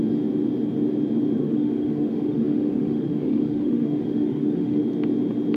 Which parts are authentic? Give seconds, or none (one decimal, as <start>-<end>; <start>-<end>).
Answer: 0.0-1.4; 4.8-5.6